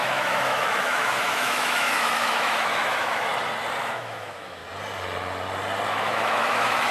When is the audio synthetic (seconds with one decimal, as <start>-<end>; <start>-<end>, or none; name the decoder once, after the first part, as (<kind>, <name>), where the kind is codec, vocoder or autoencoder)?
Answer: 0.0-3.3 (autoencoder, DAC-VAE); 3.8-4.6; 5.9-6.9